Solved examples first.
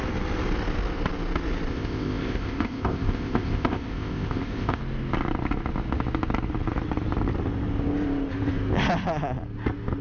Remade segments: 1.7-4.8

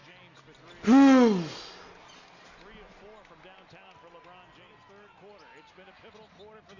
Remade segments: none

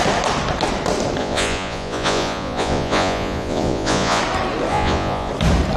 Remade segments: 1.2-4.2; 4.7-5.3

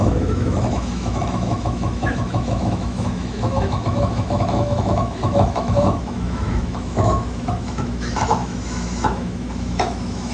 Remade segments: 0.0-10.3